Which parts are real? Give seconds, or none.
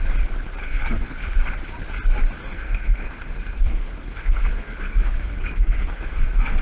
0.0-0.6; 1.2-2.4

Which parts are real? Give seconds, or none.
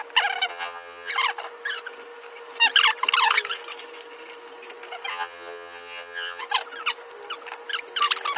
0.0-0.5; 1.1-5.1; 6.4-8.4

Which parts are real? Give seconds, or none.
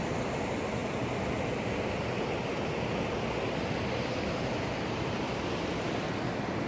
0.0-6.7